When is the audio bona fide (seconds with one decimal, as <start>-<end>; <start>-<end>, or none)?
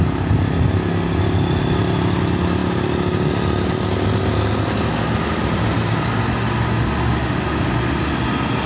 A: 0.0-8.7